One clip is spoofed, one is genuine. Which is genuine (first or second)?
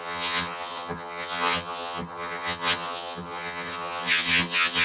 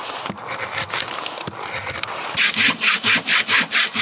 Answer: second